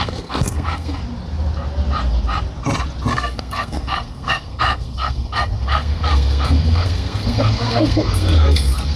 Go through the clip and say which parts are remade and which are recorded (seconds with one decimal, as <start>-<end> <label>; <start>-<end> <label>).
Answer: 0.0-1.0 remade; 1.0-3.1 recorded; 3.1-9.0 remade